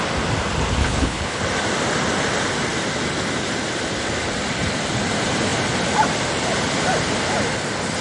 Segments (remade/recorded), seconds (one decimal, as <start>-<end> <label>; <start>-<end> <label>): 0.0-0.8 recorded; 0.8-1.4 remade; 1.4-8.0 recorded